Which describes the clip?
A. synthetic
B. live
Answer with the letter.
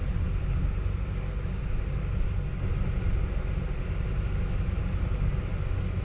B